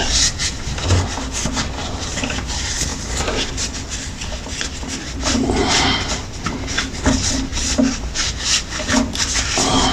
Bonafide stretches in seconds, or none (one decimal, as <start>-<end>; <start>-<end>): 0.0-9.9